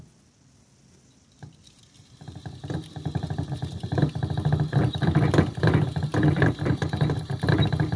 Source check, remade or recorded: recorded